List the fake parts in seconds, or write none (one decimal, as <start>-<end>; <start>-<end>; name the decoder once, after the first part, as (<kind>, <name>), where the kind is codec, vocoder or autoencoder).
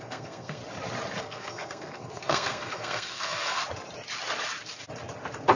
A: 0.0-0.6 (codec, SNAC); 1.2-3.6